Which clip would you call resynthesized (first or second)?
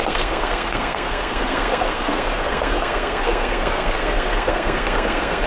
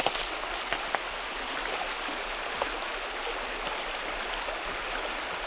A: first